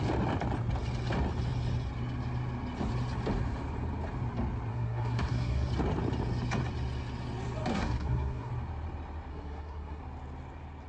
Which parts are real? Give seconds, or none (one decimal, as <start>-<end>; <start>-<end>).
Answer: 0.0-4.7; 5.7-7.7; 8.5-9.3; 10.0-10.9